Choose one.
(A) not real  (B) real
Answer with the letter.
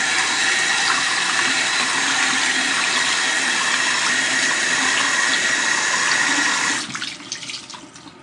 B